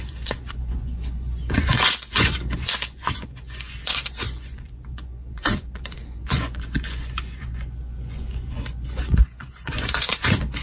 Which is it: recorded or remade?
remade